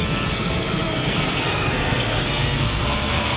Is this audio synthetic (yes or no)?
yes